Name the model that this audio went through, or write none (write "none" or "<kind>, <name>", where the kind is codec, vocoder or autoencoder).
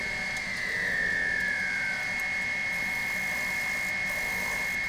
none